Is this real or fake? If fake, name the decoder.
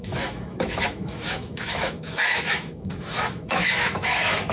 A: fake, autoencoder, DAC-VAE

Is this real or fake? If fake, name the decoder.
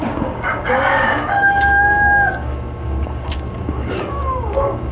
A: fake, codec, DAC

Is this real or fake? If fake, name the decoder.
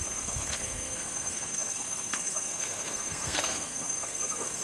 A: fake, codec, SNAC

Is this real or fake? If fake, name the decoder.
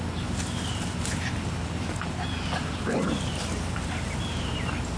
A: real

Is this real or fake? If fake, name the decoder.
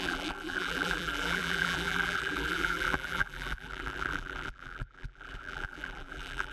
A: fake, vocoder, BigVGAN v2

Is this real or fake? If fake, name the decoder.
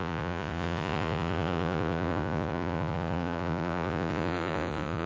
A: fake, vocoder, Vocos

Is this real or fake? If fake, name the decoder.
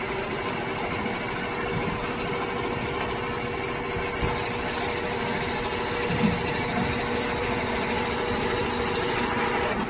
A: real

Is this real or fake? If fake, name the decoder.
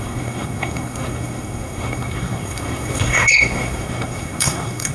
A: fake, codec, SNAC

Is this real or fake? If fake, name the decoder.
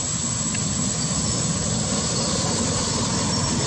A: real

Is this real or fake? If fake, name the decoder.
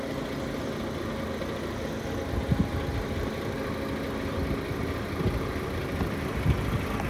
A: real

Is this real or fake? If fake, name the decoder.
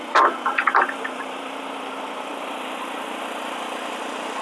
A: fake, vocoder, BigVGAN v2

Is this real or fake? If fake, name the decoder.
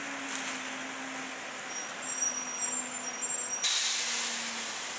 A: real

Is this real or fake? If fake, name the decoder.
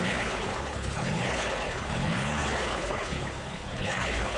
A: fake, codec, HILCodec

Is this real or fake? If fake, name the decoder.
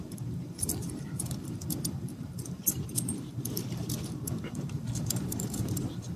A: fake, vocoder, BigVGAN v2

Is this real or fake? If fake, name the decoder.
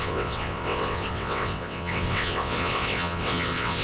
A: fake, vocoder, WaveNeXt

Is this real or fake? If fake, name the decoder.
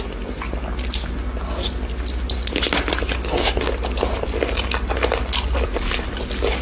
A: real